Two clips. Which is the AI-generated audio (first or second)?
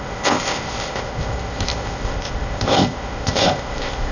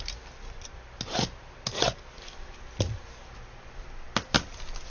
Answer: first